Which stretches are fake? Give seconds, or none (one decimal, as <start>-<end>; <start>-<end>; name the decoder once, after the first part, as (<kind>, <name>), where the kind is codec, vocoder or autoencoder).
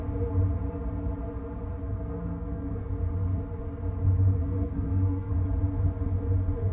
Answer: 1.8-2.9 (codec, SNAC); 4.4-5.3